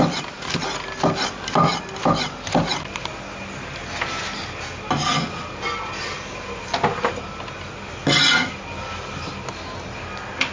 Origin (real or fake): real